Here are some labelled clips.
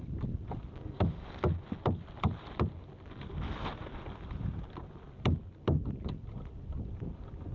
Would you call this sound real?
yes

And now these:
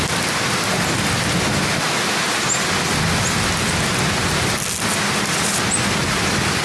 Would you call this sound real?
yes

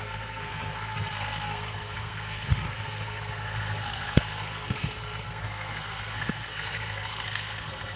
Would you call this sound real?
no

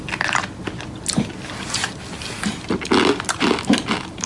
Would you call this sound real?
yes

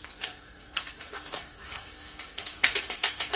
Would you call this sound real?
no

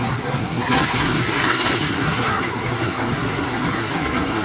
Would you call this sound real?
no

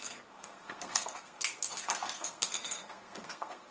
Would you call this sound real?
no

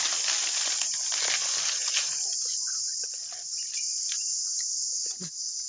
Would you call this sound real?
yes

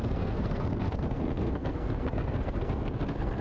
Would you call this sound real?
no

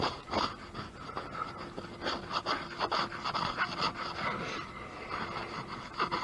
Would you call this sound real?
yes